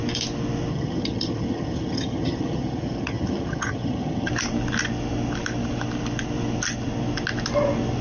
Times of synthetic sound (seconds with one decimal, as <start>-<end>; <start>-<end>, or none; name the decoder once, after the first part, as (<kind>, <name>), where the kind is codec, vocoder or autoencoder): 0.7-4.3 (vocoder, HiFi-GAN)